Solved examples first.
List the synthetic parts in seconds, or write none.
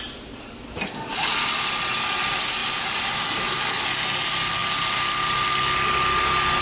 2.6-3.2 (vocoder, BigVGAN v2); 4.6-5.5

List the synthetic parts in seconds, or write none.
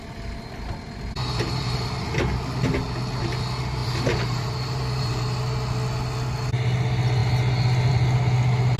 1.2-2.0 (vocoder, BigVGAN v2); 3.8-5.2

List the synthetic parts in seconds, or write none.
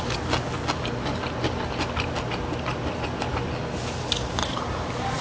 4.4-5.2 (vocoder, BigVGAN v2)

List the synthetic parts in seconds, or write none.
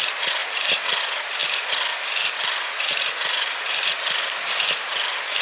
0.4-1.0 (vocoder, BigVGAN v2)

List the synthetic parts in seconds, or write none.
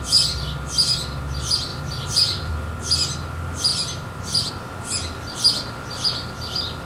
1.7-2.5 (vocoder, BigVGAN v2); 3.7-4.5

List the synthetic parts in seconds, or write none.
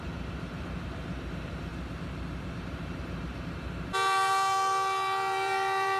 0.0-1.7 (vocoder, BigVGAN v2); 2.6-6.0